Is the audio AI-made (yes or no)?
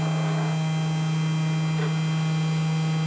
no